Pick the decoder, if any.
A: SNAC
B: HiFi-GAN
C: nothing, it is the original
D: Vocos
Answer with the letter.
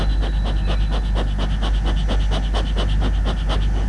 C